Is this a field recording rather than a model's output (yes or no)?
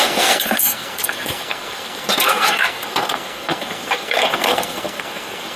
no